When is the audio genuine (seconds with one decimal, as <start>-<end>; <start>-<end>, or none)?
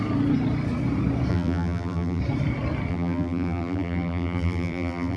0.0-1.3; 2.2-2.9